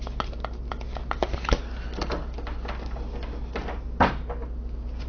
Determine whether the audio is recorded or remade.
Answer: recorded